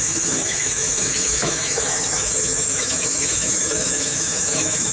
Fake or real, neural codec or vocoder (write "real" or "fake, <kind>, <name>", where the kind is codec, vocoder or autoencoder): fake, autoencoder, DAC-VAE